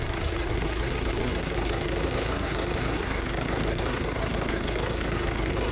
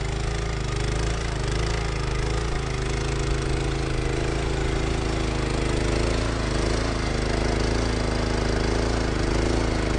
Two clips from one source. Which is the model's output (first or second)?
first